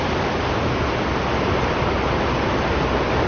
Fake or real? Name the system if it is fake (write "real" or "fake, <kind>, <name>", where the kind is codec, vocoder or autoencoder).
real